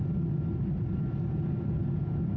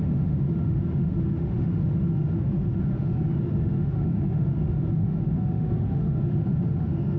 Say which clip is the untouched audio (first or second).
first